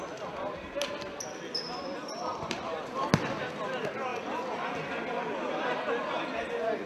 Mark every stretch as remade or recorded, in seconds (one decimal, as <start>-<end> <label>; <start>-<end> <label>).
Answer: 0.0-2.3 recorded; 2.3-3.0 remade; 3.0-6.9 recorded